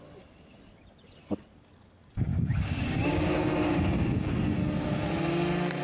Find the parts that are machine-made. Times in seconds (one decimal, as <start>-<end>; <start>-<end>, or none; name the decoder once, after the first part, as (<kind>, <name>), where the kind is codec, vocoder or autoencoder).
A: 2.3-4.3 (codec, DAC)